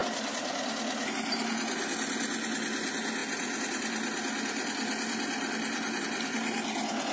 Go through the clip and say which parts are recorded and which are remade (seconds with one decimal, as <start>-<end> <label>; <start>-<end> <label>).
0.0-7.1 recorded